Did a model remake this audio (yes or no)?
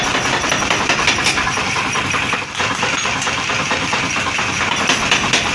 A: no